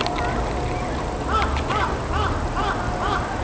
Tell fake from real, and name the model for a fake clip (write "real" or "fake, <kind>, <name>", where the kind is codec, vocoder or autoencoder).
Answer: real